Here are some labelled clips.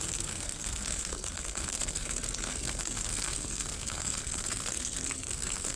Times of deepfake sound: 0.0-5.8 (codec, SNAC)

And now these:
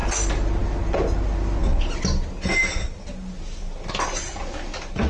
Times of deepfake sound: none

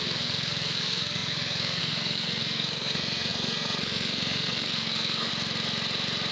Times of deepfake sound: 0.0-5.3 (codec, SNAC)

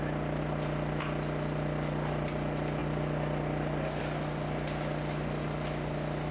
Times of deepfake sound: none

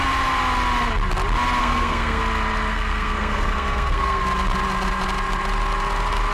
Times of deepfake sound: 1.6-2.2 (codec, SNAC); 2.7-4.2

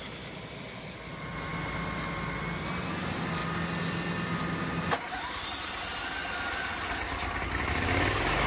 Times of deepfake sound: none

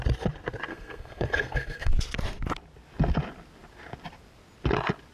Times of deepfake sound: 0.7-1.9 (codec, SNAC)

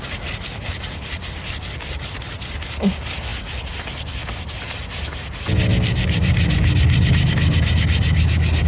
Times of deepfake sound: none